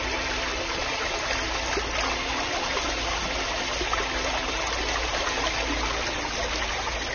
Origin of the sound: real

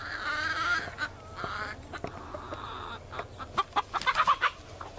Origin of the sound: real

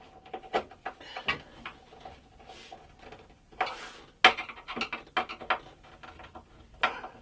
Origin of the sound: real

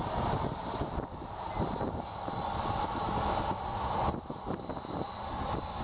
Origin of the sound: real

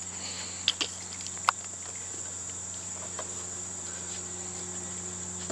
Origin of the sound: real